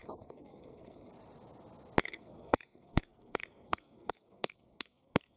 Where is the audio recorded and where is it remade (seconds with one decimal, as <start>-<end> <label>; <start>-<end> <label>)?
0.0-1.1 remade; 1.1-2.0 recorded; 2.0-5.4 remade